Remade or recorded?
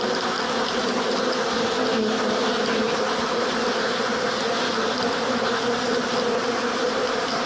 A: recorded